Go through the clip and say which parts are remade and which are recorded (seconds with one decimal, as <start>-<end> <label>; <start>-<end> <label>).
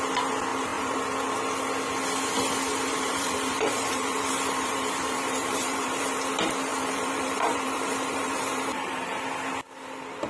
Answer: 0.0-0.5 recorded; 0.5-1.0 remade; 1.0-2.7 recorded; 2.7-6.2 remade; 6.2-6.7 recorded; 6.7-9.2 remade; 9.2-10.3 recorded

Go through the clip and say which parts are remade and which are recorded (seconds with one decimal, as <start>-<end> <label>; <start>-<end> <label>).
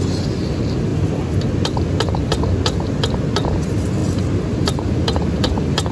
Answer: 0.0-4.0 recorded; 4.0-5.9 remade